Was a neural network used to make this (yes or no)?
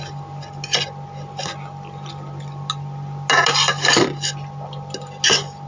no